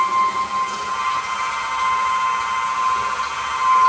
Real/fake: real